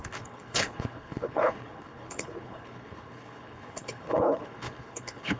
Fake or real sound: fake